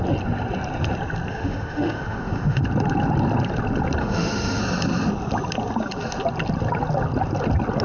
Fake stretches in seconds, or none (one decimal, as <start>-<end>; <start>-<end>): 1.3-2.6; 4.0-4.6